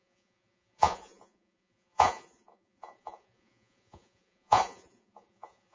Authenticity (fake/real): fake